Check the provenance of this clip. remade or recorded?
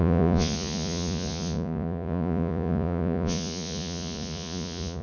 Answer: remade